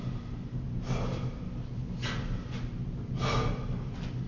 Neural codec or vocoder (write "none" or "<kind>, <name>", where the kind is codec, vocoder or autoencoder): none